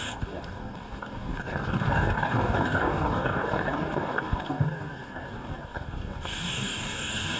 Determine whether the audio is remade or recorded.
remade